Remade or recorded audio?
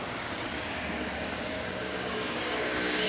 remade